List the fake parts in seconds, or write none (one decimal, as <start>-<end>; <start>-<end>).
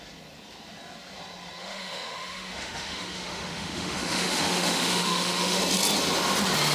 1.6-5.6